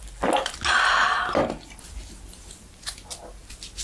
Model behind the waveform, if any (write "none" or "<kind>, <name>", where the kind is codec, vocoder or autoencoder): none